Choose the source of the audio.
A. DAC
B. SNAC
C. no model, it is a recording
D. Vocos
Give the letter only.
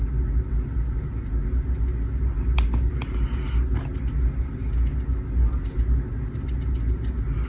C